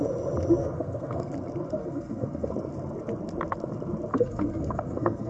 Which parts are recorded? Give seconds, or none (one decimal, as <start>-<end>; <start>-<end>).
0.0-0.6; 1.3-1.8; 2.5-4.1